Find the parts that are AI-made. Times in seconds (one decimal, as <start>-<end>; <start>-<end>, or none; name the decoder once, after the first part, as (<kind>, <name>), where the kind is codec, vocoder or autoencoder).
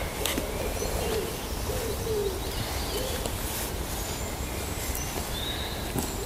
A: none